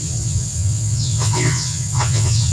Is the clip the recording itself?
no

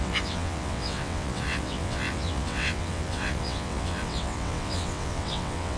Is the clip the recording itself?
no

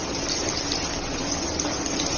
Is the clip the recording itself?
yes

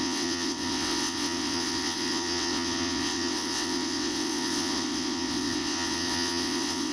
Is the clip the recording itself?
no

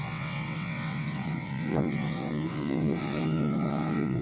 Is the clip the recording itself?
no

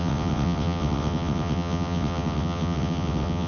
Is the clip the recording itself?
no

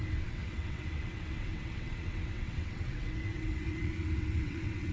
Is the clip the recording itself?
no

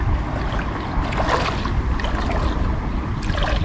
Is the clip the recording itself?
yes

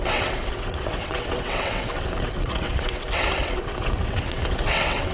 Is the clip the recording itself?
no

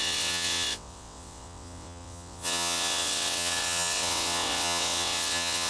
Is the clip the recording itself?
no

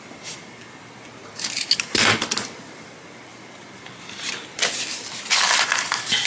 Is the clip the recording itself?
yes